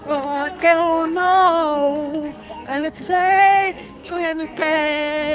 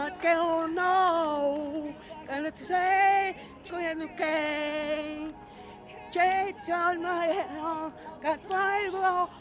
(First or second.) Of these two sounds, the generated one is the first